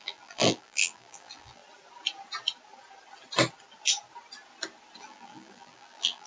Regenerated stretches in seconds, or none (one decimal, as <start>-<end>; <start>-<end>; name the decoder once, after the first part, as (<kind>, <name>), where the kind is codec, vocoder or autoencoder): 0.0-1.6 (vocoder, BigVGAN v2); 5.0-6.3